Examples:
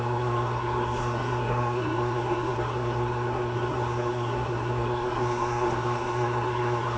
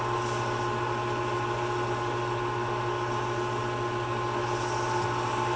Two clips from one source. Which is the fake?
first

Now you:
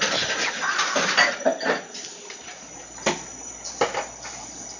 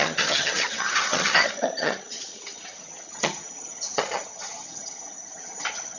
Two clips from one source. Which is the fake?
second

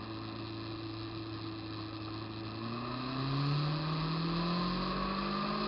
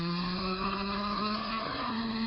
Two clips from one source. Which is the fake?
second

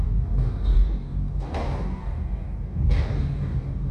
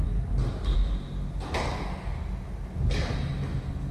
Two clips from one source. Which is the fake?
first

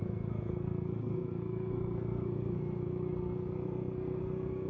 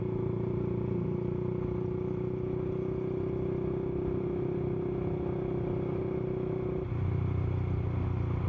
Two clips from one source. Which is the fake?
first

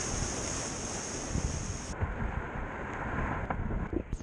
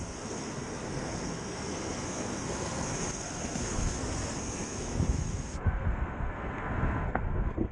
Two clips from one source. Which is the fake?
second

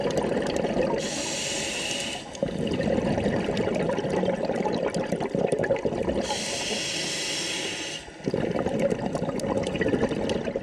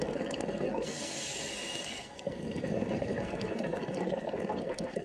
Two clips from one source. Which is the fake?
second